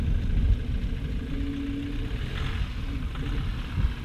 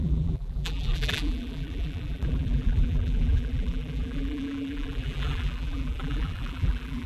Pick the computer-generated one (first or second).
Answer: second